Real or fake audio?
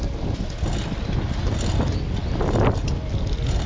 real